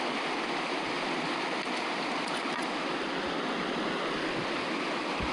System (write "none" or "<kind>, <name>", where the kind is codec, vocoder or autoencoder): none